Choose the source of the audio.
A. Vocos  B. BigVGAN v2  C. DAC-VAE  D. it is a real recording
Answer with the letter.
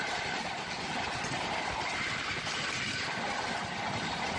B